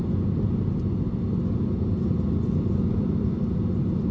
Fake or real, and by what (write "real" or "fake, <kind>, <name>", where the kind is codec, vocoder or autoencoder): real